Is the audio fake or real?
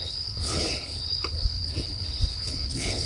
fake